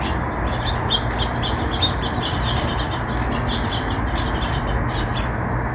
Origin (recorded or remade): recorded